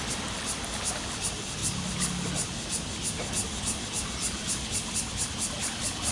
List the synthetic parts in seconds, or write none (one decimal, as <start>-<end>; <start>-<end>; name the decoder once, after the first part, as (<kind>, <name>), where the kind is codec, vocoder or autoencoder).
none

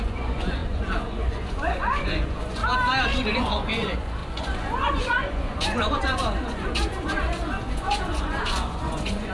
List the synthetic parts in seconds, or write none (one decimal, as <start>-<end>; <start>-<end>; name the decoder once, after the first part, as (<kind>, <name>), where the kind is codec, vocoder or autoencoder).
0.0-2.6 (vocoder, Vocos); 3.3-9.3